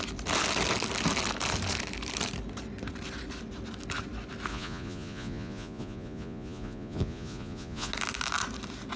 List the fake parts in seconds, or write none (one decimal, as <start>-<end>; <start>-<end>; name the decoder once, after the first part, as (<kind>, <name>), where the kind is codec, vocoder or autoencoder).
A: 4.5-7.9 (vocoder, Vocos)